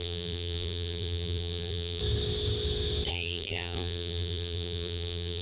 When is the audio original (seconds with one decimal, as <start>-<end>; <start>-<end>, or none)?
2.0-3.1